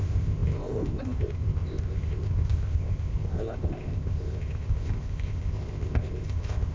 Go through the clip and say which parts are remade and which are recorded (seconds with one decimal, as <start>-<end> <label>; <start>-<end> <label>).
0.0-6.7 remade